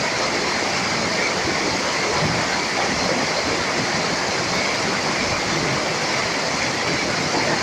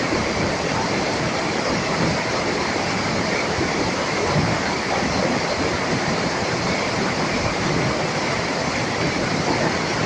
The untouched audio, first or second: first